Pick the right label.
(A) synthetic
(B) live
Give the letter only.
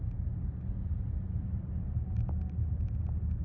B